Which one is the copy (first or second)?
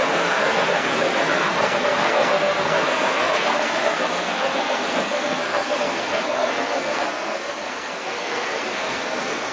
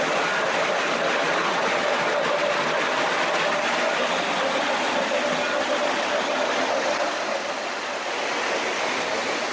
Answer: first